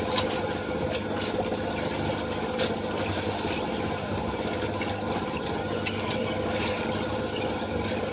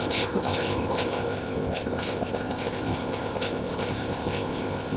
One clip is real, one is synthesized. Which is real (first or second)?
first